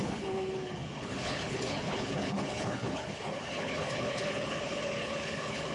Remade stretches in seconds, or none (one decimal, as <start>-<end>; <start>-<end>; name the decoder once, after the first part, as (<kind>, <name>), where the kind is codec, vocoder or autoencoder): 0.0-5.7 (codec, HILCodec)